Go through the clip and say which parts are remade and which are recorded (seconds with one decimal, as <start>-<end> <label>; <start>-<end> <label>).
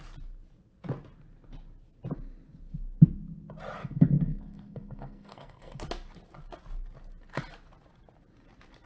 0.0-3.8 recorded; 3.8-5.8 remade; 5.8-8.9 recorded